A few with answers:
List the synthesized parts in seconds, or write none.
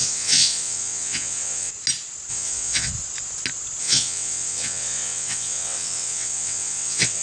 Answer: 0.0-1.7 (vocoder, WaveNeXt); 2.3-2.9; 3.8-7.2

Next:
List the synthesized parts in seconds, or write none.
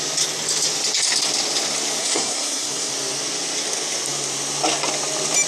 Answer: 2.0-2.9 (codec, SNAC)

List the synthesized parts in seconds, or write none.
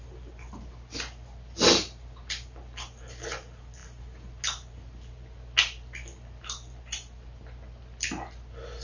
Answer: none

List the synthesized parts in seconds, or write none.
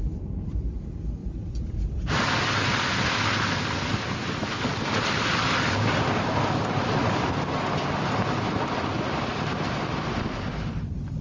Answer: 1.2-2.1 (vocoder, BigVGAN v2)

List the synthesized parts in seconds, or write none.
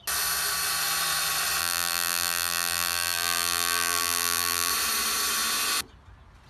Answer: 1.6-4.7 (vocoder, BigVGAN v2)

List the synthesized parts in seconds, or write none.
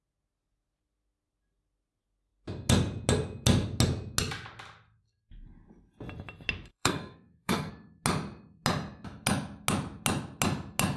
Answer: 6.7-7.7 (codec, SNAC)